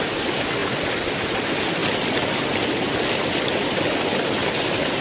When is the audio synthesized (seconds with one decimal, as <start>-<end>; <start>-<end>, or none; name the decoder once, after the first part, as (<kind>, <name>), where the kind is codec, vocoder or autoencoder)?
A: none